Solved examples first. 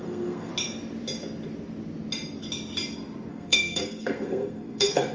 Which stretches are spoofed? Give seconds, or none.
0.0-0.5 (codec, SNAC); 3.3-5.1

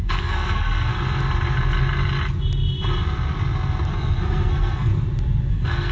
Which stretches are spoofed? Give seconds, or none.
0.0-0.9 (codec, SNAC); 3.9-4.9; 5.5-5.9

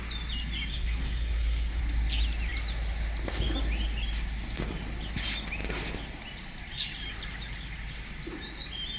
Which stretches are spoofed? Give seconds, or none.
0.7-1.8 (codec, SNAC)

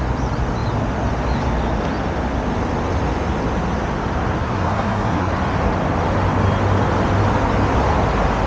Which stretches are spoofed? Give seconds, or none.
4.4-5.3 (codec, SNAC)

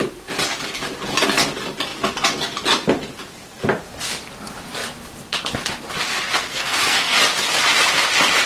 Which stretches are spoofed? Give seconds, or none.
6.4-7.2 (codec, SNAC)

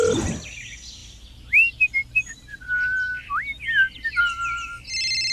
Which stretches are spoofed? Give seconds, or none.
none